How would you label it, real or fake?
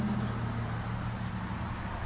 real